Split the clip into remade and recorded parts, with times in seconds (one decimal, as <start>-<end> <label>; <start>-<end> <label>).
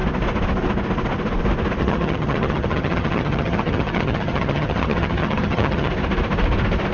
0.0-1.8 recorded; 1.8-5.9 remade; 5.9-6.9 recorded